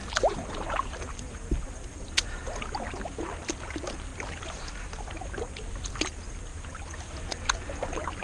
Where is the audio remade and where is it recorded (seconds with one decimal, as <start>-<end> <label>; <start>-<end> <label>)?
0.0-2.0 remade; 2.0-6.5 recorded; 6.5-7.2 remade; 7.2-8.2 recorded